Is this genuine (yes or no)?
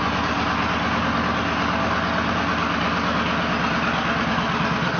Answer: yes